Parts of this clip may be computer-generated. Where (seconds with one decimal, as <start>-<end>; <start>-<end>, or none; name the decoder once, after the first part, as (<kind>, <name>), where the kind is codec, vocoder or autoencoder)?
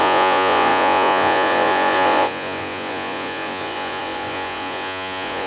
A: 0.0-5.5 (vocoder, Vocos)